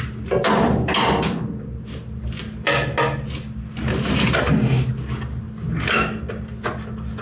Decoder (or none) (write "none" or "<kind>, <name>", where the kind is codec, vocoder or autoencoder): none